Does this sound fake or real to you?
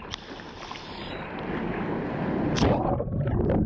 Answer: real